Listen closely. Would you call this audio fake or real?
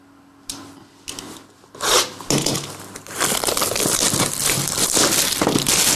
real